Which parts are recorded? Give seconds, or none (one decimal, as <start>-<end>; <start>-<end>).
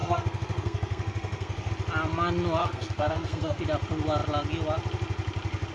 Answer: 1.7-2.6; 3.6-5.7